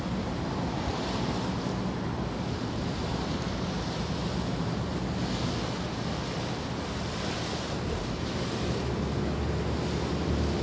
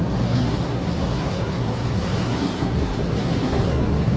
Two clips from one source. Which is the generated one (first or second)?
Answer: second